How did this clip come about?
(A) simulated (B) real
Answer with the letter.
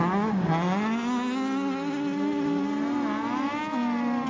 B